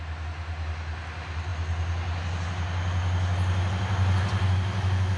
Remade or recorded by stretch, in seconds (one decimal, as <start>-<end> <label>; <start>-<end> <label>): 0.0-5.2 recorded